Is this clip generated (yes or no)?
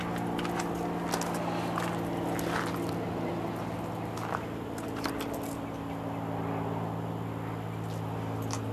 no